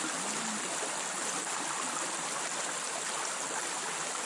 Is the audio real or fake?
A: real